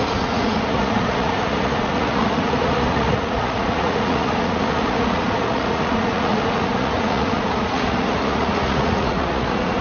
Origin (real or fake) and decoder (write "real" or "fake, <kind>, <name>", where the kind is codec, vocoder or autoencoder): fake, vocoder, Vocos